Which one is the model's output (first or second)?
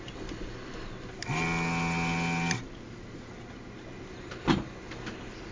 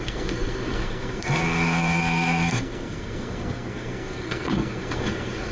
second